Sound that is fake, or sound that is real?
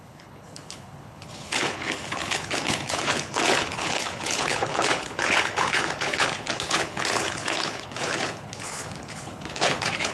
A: fake